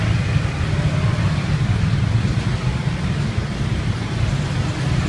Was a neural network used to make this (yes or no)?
no